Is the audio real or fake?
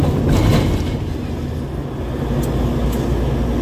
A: real